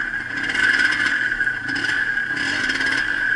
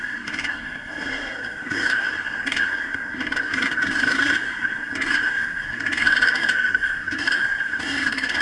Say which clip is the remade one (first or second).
second